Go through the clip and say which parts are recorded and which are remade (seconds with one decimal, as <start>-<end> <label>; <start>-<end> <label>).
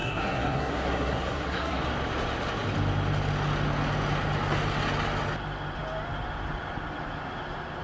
0.0-1.8 remade; 1.8-7.8 recorded